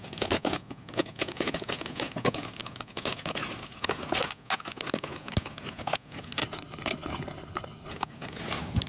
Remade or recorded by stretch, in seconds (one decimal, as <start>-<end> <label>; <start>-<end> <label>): 0.0-6.4 recorded; 6.4-7.9 remade; 7.9-8.9 recorded